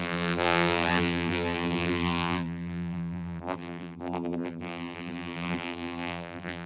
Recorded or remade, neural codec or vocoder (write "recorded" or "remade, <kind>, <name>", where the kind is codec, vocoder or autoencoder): remade, vocoder, BigVGAN v2